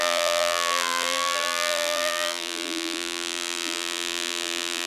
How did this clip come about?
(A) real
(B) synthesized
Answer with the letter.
B